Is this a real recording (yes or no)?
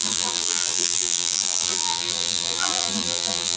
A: no